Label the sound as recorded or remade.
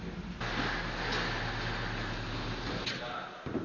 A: recorded